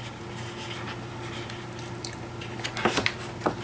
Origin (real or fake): real